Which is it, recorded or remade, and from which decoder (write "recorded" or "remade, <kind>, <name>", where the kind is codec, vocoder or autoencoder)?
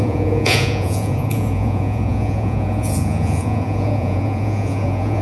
remade, vocoder, Vocos